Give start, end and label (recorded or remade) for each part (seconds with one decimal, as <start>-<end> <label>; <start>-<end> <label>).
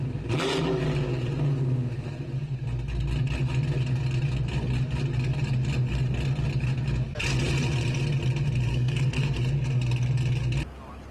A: 0.0-8.7 recorded; 8.7-9.4 remade; 9.4-11.1 recorded